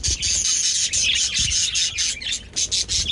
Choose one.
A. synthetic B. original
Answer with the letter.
B